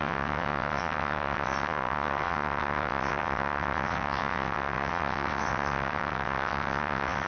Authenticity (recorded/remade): remade